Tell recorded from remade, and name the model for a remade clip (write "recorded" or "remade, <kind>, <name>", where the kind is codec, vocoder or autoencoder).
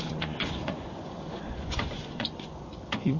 remade, vocoder, Vocos